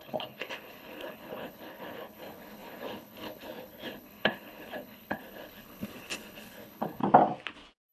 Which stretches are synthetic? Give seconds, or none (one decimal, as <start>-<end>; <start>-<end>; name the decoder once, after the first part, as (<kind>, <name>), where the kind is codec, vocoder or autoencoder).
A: 0.0-7.0 (codec, HILCodec)